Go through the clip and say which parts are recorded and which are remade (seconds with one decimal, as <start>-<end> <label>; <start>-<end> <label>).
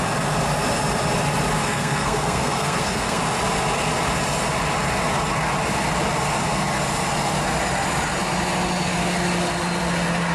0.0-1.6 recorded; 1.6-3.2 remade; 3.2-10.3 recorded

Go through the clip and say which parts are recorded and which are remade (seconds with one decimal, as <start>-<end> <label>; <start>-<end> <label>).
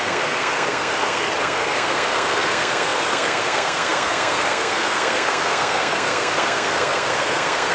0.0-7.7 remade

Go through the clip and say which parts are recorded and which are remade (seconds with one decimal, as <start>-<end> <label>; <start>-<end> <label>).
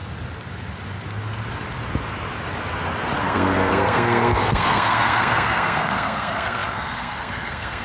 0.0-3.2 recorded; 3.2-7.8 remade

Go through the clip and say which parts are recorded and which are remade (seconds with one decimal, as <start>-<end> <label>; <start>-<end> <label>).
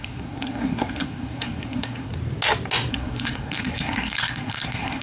0.0-2.1 remade; 2.1-2.9 recorded; 2.9-5.0 remade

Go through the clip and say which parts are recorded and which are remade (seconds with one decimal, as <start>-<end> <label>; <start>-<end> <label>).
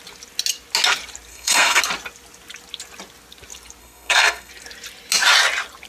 0.0-1.3 recorded; 1.3-1.8 remade; 1.8-3.8 recorded; 3.8-4.5 remade; 4.5-5.9 recorded